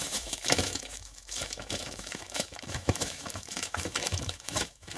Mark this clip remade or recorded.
remade